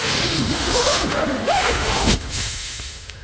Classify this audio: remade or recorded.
remade